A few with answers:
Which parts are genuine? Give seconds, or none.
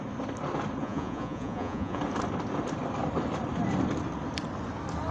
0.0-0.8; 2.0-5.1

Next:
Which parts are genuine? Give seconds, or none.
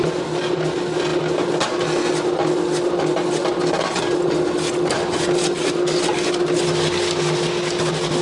0.0-8.2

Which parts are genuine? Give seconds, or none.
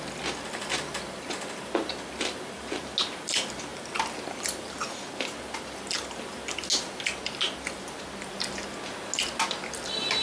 0.0-10.2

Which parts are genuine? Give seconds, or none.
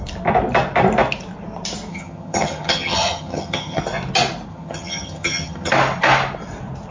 0.0-1.9; 3.8-4.5; 5.7-6.9